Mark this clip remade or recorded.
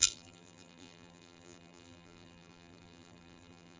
remade